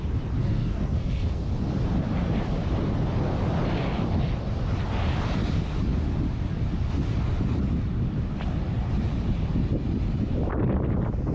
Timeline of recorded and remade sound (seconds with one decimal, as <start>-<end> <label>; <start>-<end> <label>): 0.0-0.4 recorded; 0.4-1.4 remade; 1.4-11.3 recorded